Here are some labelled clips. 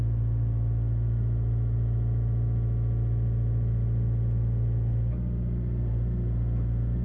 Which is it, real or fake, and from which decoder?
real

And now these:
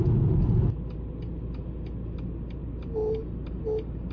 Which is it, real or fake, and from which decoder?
real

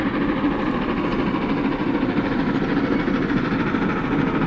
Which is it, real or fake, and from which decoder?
real